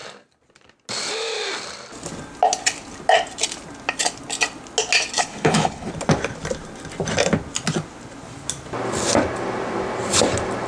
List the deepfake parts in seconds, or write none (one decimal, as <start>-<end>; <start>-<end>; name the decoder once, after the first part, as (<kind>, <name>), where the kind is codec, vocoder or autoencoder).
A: 5.2-5.9 (codec, HILCodec)